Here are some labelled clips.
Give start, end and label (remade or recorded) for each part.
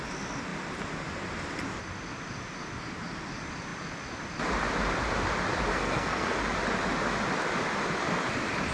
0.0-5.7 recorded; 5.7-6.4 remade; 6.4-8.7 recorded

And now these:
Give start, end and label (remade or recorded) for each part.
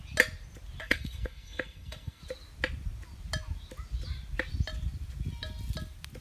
0.0-0.8 recorded; 0.8-2.2 remade; 2.2-6.2 recorded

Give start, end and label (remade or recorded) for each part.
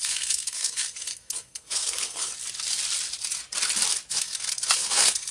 0.0-2.3 remade; 2.3-4.1 recorded; 4.1-5.3 remade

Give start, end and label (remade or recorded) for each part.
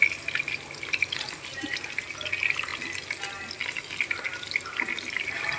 0.0-5.6 recorded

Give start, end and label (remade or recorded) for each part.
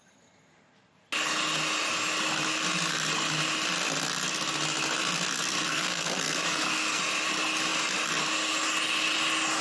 0.0-5.7 recorded; 5.7-7.0 remade; 7.0-9.6 recorded